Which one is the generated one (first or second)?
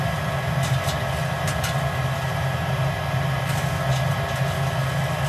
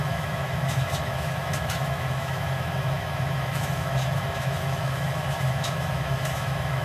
second